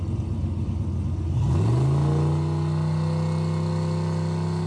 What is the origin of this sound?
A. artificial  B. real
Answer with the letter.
B